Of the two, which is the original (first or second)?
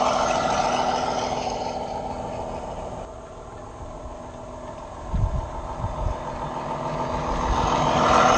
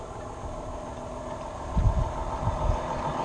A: first